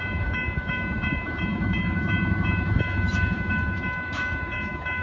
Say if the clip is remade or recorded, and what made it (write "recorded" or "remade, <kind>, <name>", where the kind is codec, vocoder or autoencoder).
remade, autoencoder, DAC-VAE